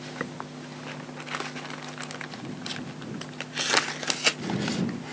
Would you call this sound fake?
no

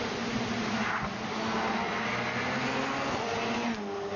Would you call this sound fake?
no